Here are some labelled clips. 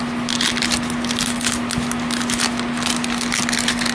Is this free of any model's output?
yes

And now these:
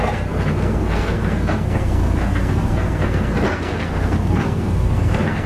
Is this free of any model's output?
no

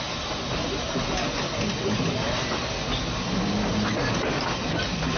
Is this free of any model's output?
yes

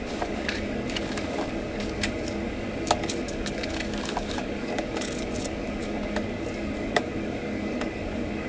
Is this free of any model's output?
no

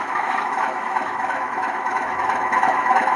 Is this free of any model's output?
no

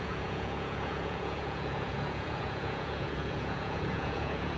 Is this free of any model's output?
no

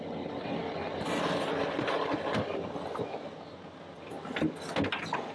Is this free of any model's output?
yes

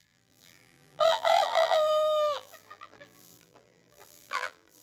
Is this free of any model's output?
no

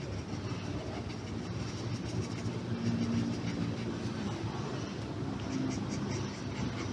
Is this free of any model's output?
yes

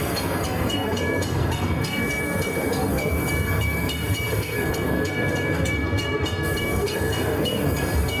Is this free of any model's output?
no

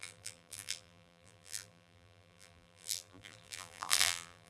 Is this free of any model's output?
no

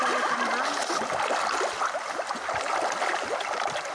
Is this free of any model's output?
yes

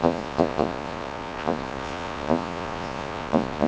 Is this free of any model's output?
no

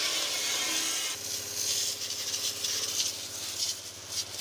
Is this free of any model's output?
yes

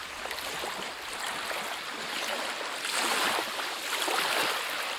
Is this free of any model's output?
yes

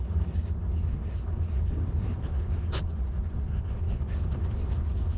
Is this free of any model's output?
yes